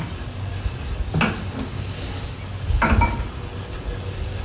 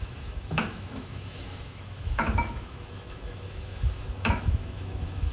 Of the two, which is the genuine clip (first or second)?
first